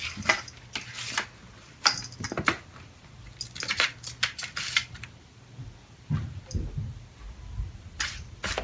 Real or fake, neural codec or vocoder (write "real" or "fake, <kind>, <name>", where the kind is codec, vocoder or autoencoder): real